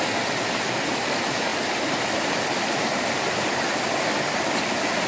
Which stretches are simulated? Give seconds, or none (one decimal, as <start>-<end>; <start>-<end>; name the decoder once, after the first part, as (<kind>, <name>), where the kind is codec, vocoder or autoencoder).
none